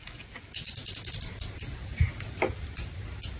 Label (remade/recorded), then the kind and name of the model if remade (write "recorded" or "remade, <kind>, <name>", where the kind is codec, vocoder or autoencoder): recorded